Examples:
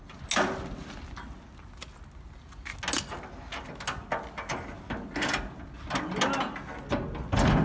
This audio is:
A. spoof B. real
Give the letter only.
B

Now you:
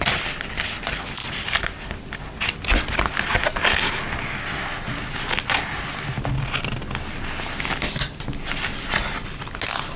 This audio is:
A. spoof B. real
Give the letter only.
B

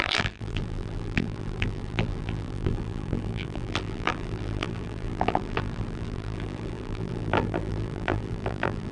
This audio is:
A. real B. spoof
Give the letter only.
B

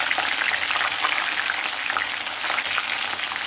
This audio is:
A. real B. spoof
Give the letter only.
A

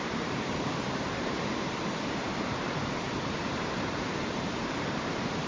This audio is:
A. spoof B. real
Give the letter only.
A